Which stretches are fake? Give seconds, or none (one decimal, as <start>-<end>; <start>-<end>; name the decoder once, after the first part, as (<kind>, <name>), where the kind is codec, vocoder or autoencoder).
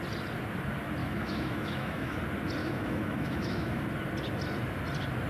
1.0-2.2 (autoencoder, DAC-VAE); 2.6-3.8